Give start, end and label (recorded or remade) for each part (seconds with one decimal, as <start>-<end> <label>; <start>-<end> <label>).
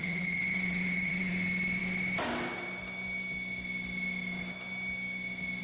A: 0.0-1.3 remade; 1.3-5.6 recorded